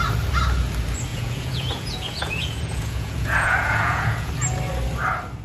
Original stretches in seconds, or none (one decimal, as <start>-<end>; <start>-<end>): 0.0-1.1; 4.3-5.4